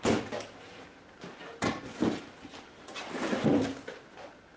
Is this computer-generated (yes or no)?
no